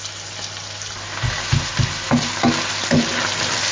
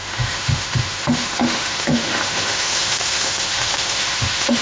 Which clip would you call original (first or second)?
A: first